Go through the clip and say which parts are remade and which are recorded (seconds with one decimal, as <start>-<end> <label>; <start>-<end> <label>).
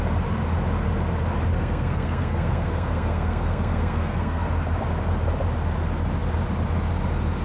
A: 0.0-1.5 recorded; 1.5-4.5 remade; 4.5-7.4 recorded